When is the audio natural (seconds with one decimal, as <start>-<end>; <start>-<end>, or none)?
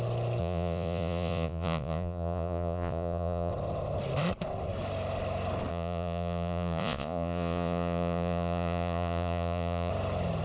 0.0-0.4; 3.5-5.7; 9.9-10.4